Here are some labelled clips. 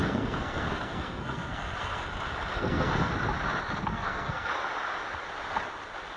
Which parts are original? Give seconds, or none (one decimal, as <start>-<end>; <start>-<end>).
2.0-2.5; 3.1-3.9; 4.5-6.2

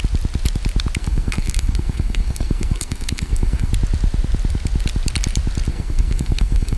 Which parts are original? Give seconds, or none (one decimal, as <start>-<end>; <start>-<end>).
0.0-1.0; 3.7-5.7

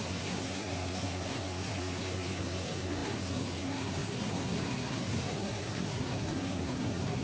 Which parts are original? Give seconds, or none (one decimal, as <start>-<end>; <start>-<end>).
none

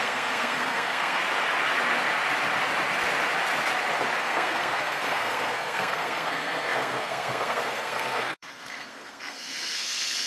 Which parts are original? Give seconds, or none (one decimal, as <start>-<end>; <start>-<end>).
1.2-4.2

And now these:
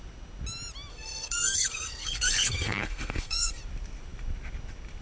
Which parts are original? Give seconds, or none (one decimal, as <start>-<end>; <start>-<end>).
0.0-0.9; 3.6-5.0